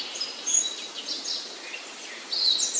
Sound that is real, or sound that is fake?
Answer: real